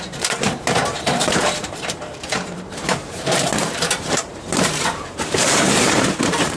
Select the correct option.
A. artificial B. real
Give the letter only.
A